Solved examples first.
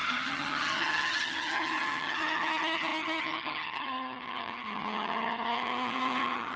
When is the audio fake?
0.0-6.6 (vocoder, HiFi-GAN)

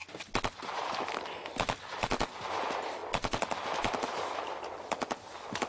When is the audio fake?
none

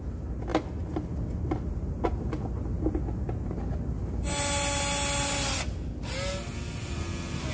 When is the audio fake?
none

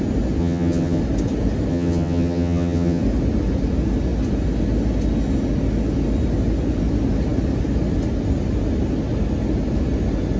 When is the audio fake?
0.4-1.0 (vocoder, HiFi-GAN); 1.7-3.0